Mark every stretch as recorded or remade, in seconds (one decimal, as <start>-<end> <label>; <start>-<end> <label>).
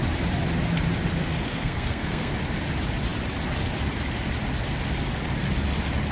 0.0-1.3 recorded; 1.3-2.3 remade; 2.3-6.1 recorded